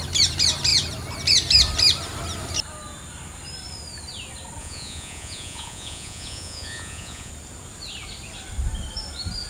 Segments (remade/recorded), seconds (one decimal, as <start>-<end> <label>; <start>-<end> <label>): 0.0-4.6 recorded; 4.6-7.3 remade; 7.3-9.5 recorded